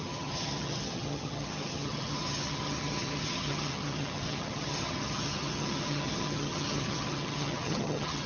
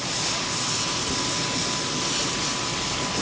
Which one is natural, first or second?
second